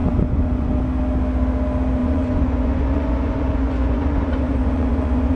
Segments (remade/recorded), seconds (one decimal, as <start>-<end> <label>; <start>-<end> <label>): 0.0-0.7 remade; 0.7-2.0 recorded; 2.0-5.4 remade